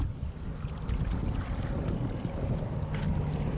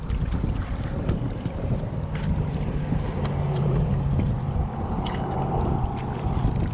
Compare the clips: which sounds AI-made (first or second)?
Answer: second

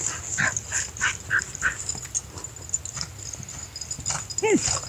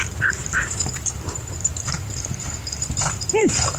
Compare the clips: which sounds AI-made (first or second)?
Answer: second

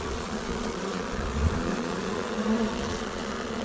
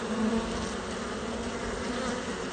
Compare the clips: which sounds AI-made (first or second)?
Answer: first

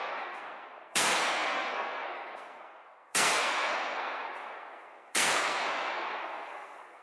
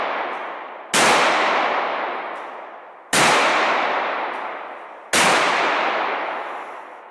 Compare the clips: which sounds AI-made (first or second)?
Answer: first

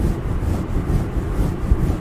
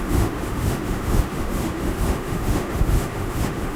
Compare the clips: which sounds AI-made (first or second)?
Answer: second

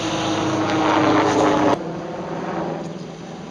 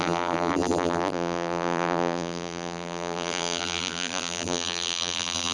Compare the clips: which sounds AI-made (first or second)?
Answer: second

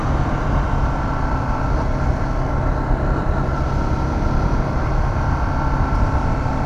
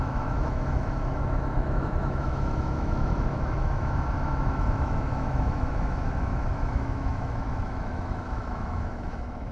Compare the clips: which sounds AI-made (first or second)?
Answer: second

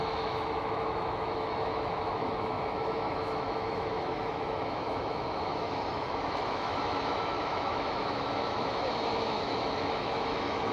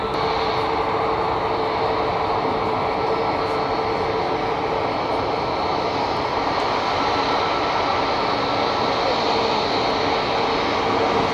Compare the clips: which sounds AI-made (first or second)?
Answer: first